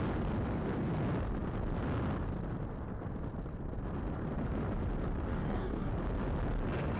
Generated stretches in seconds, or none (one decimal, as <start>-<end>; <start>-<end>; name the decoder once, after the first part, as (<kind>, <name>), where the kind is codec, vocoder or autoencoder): 5.3-5.9 (codec, DAC)

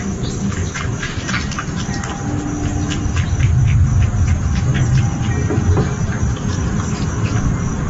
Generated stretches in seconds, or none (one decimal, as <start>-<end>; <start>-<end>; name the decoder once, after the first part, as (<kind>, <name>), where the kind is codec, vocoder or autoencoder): 0.6-1.3 (vocoder, BigVGAN v2)